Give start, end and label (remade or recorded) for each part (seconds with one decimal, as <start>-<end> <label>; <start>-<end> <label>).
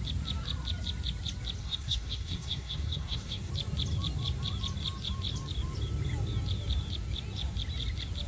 0.0-1.6 recorded; 1.6-3.5 remade; 3.5-8.3 recorded